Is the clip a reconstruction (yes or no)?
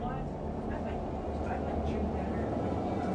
no